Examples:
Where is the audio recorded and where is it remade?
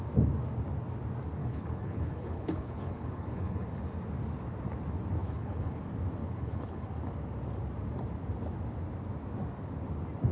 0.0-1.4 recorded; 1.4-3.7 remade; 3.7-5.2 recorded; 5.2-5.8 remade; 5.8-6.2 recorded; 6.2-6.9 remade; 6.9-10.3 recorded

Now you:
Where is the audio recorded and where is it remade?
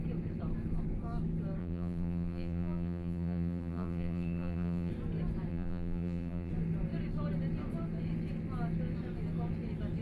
0.0-1.6 recorded; 1.6-4.9 remade; 4.9-5.5 recorded; 5.5-6.5 remade; 6.5-10.0 recorded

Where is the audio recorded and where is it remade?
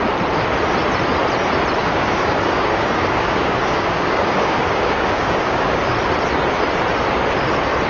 0.0-1.8 recorded; 1.8-5.8 remade; 5.8-7.9 recorded